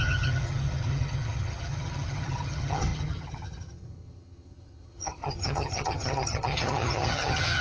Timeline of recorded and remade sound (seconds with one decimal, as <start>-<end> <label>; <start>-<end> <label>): 0.0-7.6 remade